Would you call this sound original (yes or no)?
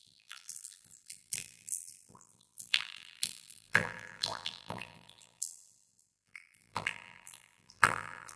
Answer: no